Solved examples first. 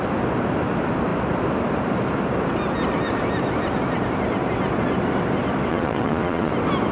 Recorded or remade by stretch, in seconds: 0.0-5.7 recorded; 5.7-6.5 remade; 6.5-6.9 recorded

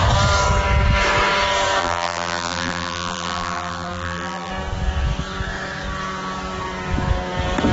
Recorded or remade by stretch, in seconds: 0.0-1.8 recorded; 1.8-4.5 remade; 4.5-7.7 recorded

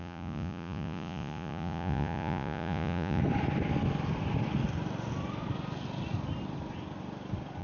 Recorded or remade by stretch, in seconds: 0.0-3.2 remade; 3.2-7.6 recorded

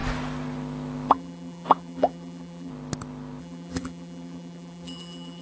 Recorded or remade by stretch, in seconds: 0.0-1.1 recorded; 1.1-2.7 remade; 2.7-3.4 recorded; 3.4-5.4 remade

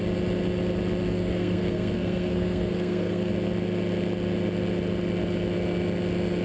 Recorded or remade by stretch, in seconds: 0.0-1.1 recorded; 1.1-3.3 remade; 3.3-6.4 recorded

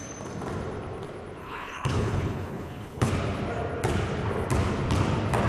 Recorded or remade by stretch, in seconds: 0.0-1.4 recorded; 1.4-3.1 remade; 3.1-5.5 recorded

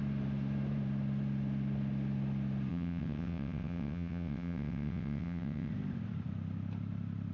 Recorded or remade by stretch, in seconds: 0.0-2.7 recorded; 2.7-5.7 remade; 5.7-7.3 recorded

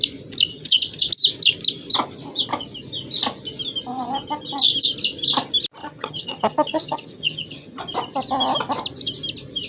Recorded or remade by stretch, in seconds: 0.0-0.5 recorded; 0.5-1.1 remade; 1.1-5.8 recorded; 5.8-7.8 remade; 7.8-9.7 recorded